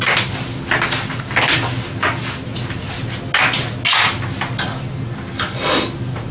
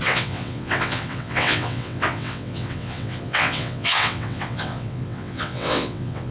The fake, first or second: second